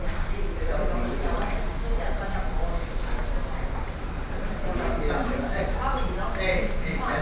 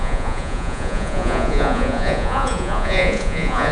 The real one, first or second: first